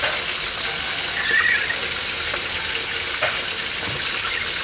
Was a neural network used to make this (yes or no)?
no